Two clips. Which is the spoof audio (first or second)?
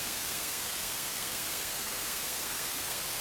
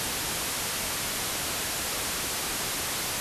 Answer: first